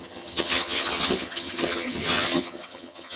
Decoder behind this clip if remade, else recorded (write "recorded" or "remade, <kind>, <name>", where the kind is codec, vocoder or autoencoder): remade, vocoder, HiFi-GAN